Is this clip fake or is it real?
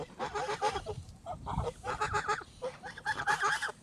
fake